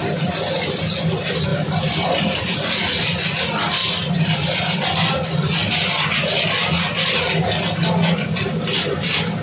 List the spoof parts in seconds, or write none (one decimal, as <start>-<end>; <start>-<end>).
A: none